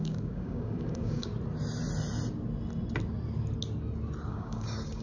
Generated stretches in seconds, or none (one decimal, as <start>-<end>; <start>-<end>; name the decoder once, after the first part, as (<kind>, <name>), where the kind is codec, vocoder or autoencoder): 0.0-1.3 (codec, DAC); 4.3-5.0